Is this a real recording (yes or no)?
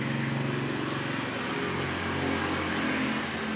yes